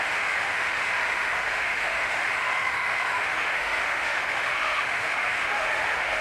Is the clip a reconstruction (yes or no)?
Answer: yes